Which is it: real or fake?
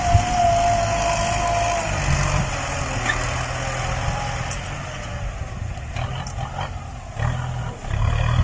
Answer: real